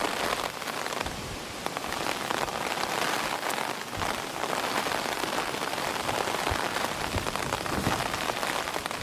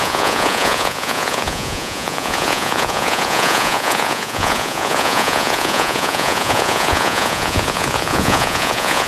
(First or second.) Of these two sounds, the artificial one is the second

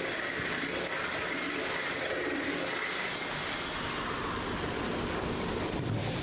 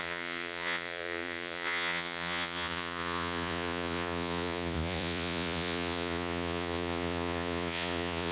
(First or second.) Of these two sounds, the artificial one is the second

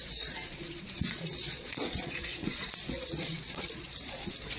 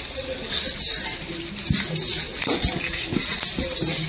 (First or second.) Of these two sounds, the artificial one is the first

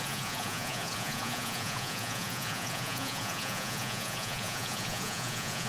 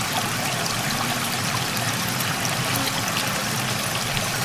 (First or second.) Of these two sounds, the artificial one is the first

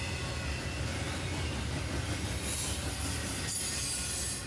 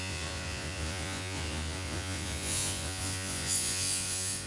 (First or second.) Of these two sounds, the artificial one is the second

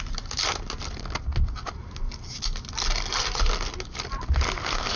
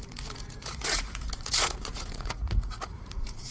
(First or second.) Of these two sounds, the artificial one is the second